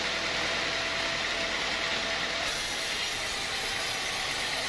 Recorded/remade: recorded